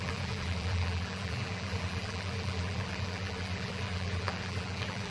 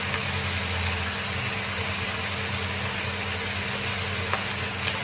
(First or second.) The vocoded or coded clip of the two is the first